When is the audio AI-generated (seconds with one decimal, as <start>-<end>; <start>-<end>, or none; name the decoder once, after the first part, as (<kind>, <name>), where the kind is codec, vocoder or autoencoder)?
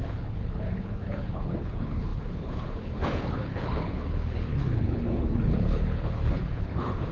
0.0-7.1 (codec, HILCodec)